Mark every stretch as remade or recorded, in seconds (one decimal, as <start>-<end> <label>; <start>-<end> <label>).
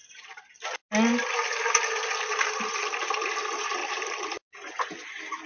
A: 0.0-3.8 recorded; 3.8-4.5 remade; 4.5-5.5 recorded